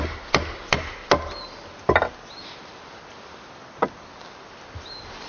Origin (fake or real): real